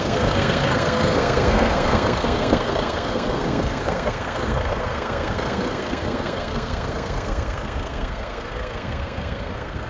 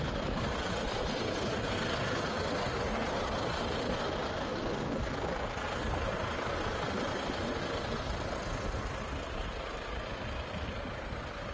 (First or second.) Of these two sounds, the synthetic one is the first